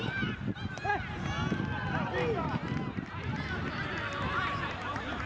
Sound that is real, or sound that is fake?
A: real